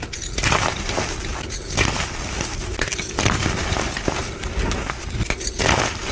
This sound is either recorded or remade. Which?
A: recorded